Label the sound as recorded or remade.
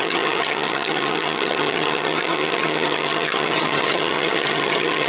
remade